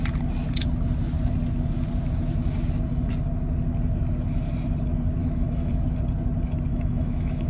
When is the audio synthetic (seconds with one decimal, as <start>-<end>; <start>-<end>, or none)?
5.2-5.7; 6.7-7.5